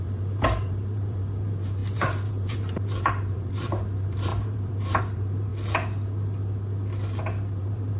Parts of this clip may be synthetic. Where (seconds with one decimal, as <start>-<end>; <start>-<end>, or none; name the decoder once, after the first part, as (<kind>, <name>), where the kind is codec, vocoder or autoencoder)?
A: 0.0-5.5 (vocoder, BigVGAN v2); 7.5-8.0